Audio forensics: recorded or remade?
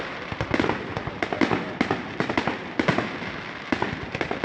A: recorded